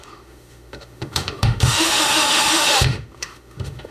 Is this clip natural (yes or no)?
no